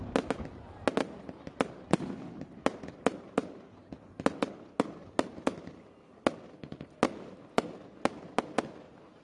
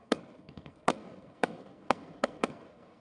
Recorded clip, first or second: first